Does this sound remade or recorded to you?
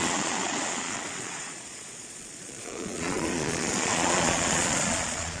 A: remade